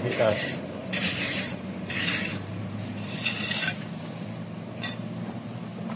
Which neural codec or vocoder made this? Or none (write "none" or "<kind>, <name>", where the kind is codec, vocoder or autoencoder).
vocoder, BigVGAN v2